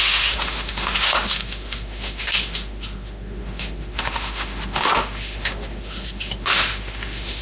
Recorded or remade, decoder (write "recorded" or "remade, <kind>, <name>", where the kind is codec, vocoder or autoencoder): remade, autoencoder, DAC-VAE